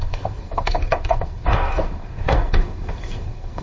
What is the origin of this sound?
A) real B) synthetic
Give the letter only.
B